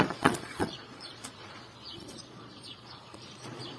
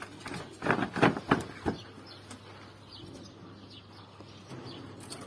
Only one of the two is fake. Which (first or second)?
first